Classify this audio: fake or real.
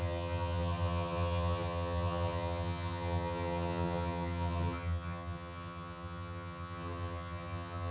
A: fake